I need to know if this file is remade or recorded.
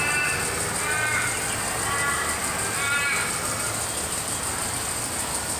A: recorded